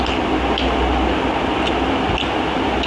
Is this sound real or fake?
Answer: real